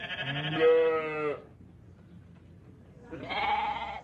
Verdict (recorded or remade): recorded